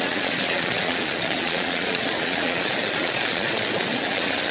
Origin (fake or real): fake